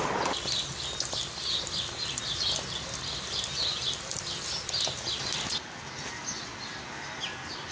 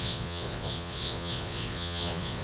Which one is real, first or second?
first